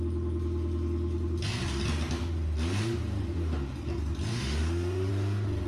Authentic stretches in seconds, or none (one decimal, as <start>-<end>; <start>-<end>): 0.0-4.3; 5.1-5.7